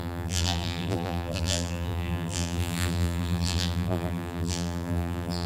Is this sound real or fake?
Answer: fake